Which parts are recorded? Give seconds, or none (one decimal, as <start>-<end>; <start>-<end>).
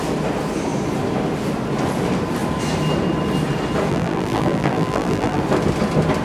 0.0-3.9; 5.4-6.2